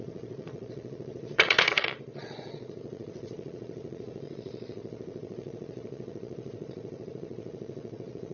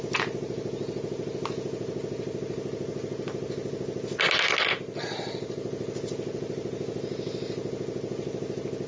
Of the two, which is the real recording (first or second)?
second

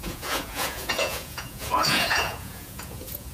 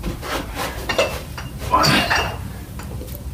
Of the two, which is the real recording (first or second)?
second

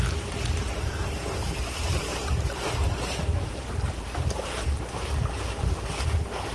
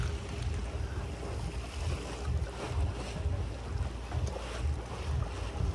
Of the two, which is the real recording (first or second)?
second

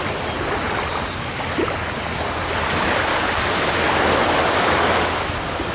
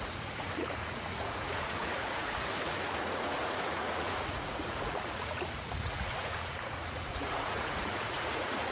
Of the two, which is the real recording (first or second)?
first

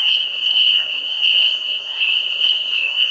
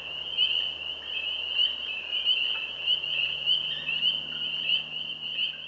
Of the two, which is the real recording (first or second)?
second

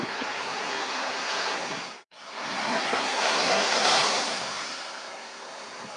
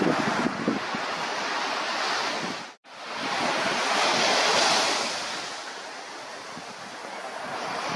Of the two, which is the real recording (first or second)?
second